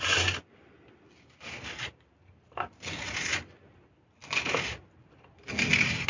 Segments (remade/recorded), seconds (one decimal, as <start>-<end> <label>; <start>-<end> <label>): 0.0-6.1 recorded